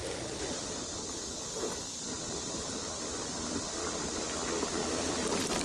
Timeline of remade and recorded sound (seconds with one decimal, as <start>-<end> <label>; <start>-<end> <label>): 0.0-0.7 remade; 0.7-1.6 recorded; 1.6-4.0 remade; 4.0-4.8 recorded; 4.8-5.6 remade